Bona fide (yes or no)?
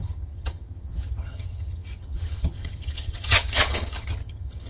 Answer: no